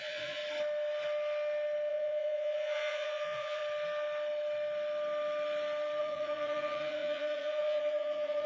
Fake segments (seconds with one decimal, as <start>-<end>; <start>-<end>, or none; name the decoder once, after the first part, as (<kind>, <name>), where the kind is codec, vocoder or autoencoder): 0.0-0.4 (vocoder, Vocos); 1.9-3.6; 6.0-8.5